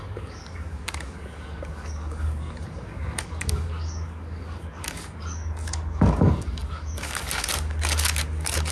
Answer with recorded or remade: remade